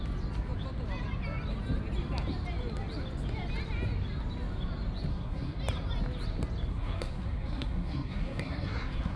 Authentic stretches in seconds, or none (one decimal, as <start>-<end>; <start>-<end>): 0.0-5.1; 5.6-6.7